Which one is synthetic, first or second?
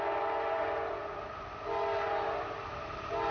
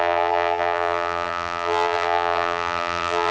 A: second